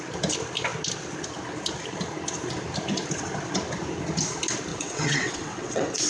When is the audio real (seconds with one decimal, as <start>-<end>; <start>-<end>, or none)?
0.0-4.7